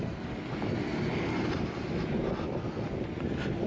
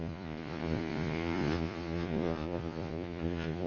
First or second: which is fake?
second